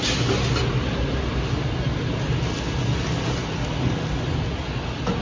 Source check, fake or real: real